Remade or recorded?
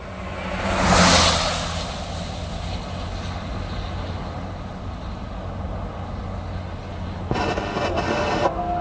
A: recorded